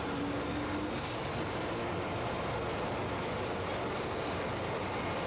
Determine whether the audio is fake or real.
real